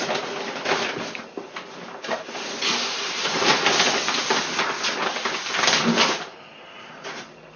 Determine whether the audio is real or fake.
real